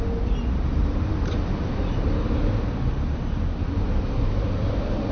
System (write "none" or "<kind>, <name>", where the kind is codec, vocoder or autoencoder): none